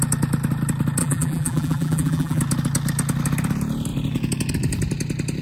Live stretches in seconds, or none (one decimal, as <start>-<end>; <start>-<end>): 0.0-1.0; 2.4-5.4